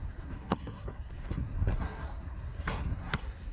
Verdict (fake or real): fake